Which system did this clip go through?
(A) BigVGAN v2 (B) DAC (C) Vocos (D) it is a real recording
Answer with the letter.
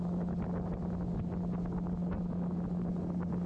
D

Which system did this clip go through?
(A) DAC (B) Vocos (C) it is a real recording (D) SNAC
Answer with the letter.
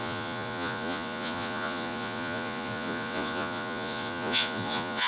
B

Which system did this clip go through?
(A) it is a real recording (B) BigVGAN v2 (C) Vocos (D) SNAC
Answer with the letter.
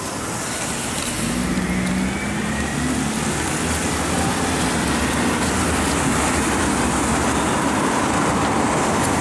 A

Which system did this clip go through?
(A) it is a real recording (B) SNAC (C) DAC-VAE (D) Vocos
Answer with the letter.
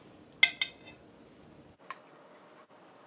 A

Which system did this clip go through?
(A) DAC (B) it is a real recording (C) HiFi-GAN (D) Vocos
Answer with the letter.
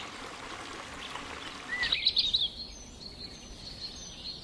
B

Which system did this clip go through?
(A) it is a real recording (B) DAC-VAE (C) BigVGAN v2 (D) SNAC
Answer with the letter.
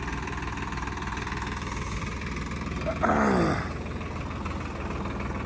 A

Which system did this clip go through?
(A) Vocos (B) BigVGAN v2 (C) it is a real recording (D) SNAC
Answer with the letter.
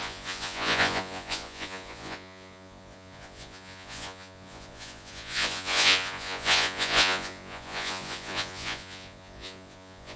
A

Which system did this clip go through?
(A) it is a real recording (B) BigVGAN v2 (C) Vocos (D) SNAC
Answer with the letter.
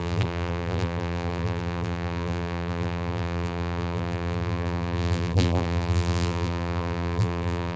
B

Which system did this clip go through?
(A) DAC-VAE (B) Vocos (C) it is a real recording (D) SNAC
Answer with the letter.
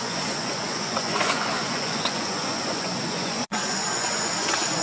B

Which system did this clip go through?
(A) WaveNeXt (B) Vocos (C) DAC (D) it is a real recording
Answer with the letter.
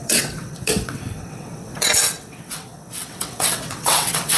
A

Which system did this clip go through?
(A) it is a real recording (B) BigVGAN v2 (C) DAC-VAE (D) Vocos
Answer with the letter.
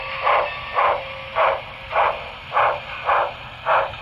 A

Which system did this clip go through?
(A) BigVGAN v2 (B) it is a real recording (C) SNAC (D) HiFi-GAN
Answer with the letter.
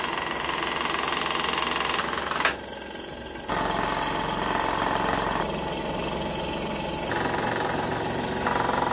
B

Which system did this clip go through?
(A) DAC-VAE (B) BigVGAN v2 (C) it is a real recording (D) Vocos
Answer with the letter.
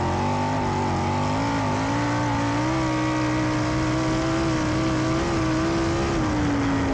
C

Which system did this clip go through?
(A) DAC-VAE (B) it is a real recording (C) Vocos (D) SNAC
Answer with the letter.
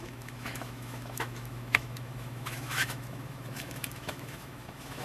A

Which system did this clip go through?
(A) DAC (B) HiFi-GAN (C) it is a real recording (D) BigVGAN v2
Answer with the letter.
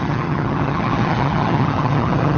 B